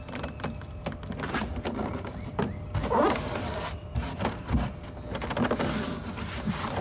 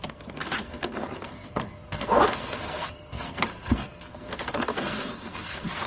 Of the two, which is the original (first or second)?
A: first